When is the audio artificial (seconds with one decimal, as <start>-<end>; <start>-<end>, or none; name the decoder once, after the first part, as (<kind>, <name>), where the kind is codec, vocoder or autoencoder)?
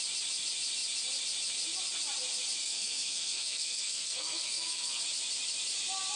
2.6-5.0 (codec, SNAC)